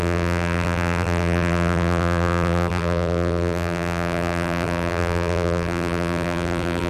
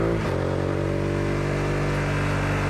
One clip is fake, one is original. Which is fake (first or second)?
first